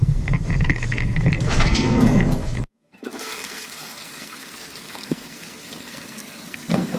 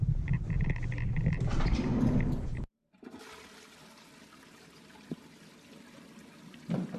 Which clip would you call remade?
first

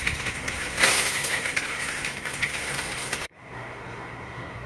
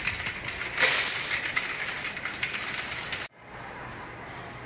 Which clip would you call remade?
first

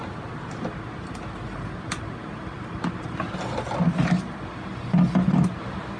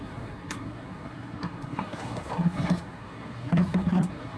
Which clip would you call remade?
second